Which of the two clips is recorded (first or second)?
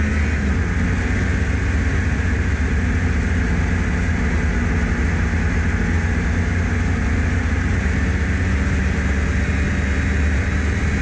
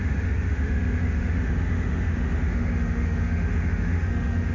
first